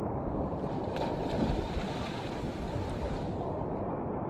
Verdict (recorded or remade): remade